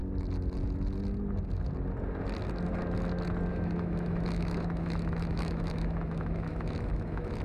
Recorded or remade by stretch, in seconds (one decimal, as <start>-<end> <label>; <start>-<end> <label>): 0.0-3.5 recorded; 3.5-7.4 remade